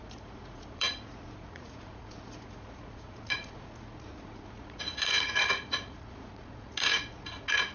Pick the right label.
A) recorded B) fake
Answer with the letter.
B